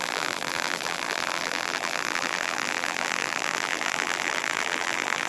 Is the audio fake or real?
fake